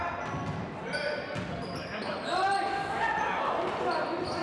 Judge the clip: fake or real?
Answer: real